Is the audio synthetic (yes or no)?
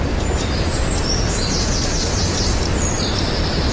no